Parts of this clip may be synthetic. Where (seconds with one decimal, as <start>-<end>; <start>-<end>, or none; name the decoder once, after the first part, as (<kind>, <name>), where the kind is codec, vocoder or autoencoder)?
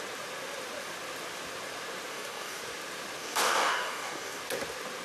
2.1-2.6 (codec, DAC); 3.2-4.4